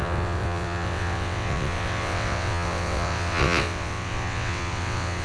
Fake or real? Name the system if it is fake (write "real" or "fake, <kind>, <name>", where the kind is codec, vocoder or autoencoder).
fake, vocoder, WaveNeXt